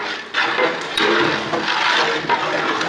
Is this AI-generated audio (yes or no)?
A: no